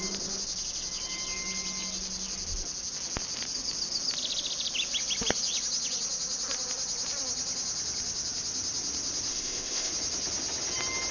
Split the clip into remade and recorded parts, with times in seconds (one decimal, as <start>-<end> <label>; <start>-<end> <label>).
0.0-9.3 recorded; 9.3-9.9 remade; 9.9-11.1 recorded